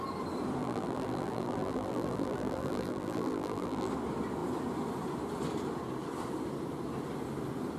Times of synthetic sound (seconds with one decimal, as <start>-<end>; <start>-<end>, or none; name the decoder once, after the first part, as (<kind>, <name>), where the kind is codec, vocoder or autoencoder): 0.6-3.9 (vocoder, BigVGAN v2)